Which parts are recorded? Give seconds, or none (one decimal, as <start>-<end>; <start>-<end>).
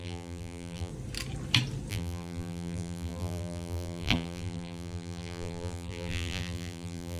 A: 0.9-1.9